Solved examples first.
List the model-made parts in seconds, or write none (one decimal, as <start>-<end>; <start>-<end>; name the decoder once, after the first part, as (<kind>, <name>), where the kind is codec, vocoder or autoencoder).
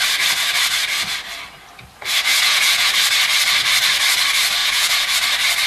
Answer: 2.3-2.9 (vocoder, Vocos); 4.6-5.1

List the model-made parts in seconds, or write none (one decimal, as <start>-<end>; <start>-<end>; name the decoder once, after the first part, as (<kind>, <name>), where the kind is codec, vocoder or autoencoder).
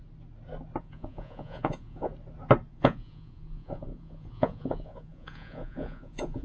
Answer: 0.8-2.1 (vocoder, Vocos); 2.7-6.4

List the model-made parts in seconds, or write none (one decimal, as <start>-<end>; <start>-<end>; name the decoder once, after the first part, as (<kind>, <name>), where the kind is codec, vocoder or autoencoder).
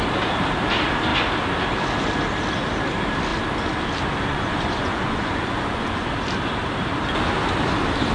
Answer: 4.3-6.1 (vocoder, Vocos)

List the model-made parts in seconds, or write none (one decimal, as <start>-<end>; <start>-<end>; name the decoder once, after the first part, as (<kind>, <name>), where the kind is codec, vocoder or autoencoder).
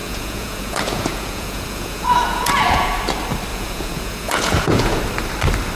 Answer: 0.0-2.9 (vocoder, Vocos); 3.5-5.0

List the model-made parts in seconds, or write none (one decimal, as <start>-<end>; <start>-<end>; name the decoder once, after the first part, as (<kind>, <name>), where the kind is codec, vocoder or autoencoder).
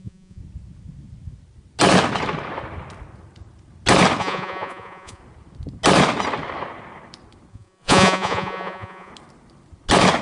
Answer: 0.0-0.4 (vocoder, Vocos); 4.2-5.2; 7.5-9.1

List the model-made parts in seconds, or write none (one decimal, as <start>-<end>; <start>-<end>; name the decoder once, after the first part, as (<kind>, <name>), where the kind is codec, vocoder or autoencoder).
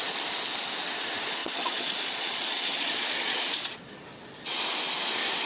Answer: 1.4-3.8 (vocoder, Vocos)